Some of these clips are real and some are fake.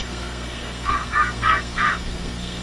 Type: fake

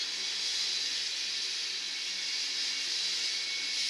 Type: real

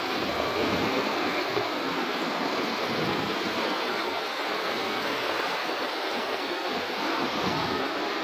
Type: fake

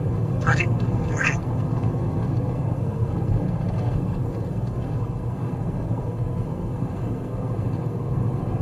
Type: fake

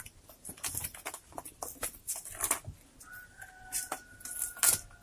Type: real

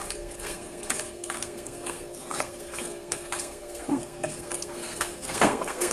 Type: fake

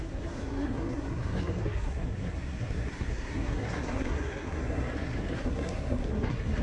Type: fake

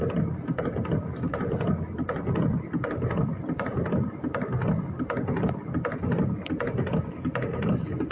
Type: real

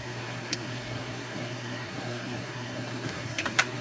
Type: fake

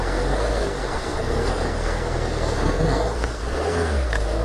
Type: fake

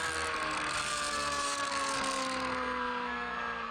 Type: fake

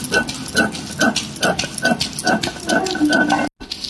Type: real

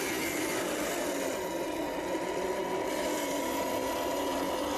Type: real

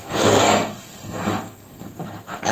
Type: fake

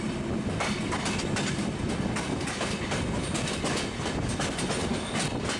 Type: real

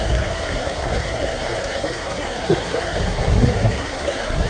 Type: fake